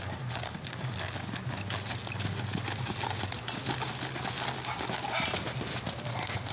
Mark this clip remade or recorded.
recorded